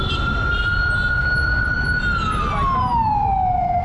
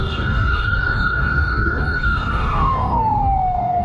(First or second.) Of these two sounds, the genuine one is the first